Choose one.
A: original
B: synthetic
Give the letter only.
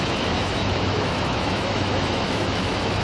B